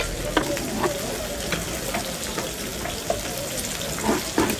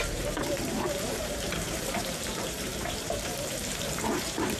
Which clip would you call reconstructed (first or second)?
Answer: second